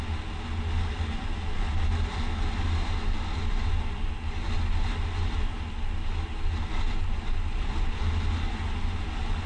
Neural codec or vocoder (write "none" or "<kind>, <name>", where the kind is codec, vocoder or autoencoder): none